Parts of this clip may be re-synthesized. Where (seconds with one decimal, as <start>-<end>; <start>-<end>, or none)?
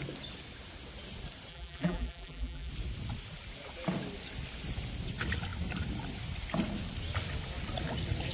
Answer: 1.5-2.7